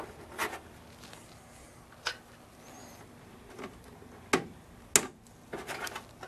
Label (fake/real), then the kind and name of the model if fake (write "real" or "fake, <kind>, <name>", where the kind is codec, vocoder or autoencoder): real